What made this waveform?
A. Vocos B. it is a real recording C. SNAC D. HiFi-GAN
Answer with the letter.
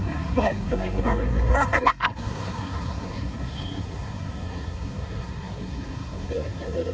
C